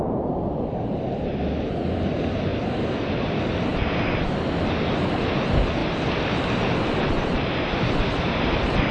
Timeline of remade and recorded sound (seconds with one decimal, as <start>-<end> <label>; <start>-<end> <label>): 0.0-8.9 recorded